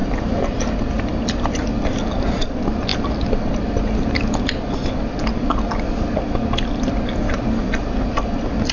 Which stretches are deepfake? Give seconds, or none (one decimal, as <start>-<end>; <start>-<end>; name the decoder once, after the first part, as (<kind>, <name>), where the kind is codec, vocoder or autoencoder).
none